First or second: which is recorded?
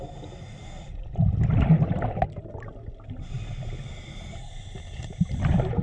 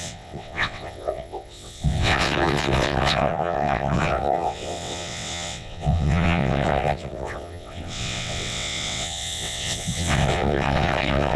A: first